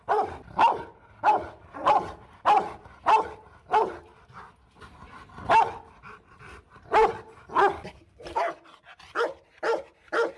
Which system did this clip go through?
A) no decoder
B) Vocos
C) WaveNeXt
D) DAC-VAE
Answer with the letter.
A